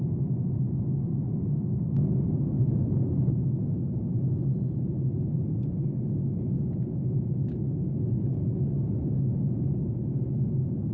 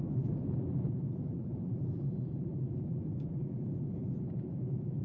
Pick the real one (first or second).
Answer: first